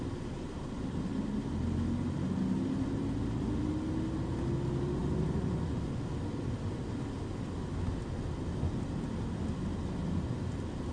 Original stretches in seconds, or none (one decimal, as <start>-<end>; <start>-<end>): 0.0-10.9